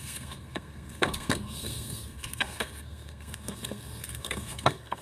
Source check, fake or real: fake